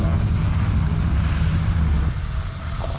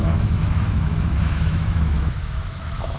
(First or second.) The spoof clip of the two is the second